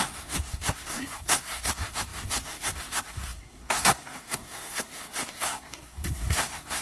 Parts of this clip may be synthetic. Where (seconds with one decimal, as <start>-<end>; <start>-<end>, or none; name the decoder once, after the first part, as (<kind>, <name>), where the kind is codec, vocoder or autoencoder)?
0.0-6.8 (codec, SNAC)